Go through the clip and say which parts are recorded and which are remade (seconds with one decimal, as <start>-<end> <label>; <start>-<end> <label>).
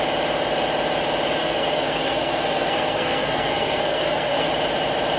0.0-1.4 recorded; 1.4-4.5 remade; 4.5-5.2 recorded